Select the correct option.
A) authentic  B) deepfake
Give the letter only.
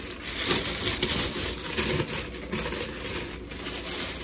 A